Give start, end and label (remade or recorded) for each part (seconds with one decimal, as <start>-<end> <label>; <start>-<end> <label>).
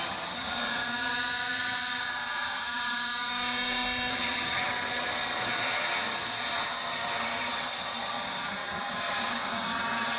0.0-3.3 remade; 3.3-4.1 recorded; 4.1-10.2 remade